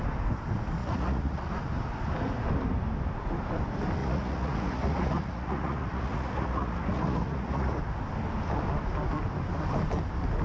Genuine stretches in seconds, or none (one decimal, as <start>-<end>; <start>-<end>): 0.0-0.8; 1.5-4.0; 7.8-10.4